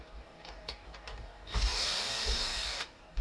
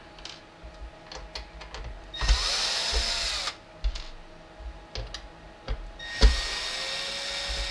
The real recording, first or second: second